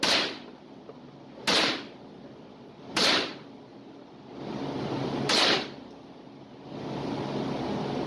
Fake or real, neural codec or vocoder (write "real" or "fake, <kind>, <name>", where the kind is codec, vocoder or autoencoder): real